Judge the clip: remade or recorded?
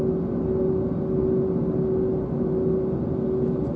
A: recorded